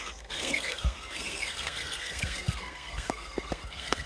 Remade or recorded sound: remade